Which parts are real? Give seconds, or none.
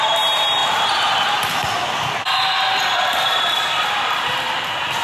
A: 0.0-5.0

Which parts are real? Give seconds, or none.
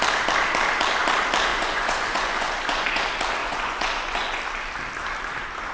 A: 0.0-1.5; 3.0-3.4; 4.4-5.7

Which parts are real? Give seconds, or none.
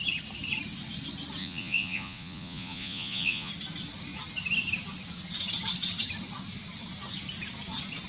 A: 0.0-1.4; 3.5-8.1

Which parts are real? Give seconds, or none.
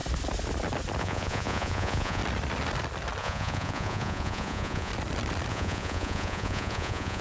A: 0.0-1.0; 2.2-3.2; 4.9-5.5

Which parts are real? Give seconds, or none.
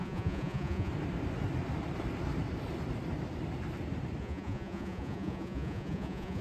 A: 0.9-4.2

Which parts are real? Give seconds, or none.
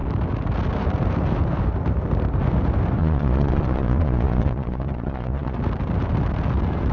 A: 0.0-3.0; 5.6-6.9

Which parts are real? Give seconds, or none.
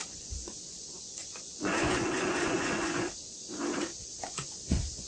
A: 3.1-4.1